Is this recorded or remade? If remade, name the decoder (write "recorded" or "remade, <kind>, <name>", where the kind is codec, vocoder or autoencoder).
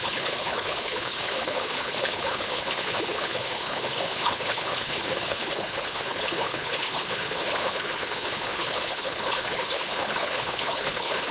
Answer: remade, codec, HILCodec